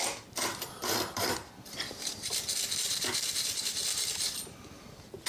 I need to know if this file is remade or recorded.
remade